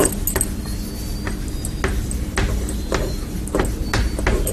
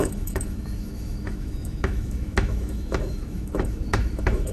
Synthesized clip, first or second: second